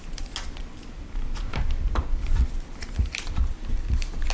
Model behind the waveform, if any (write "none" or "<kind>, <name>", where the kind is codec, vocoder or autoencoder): none